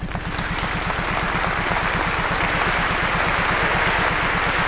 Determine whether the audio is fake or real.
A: real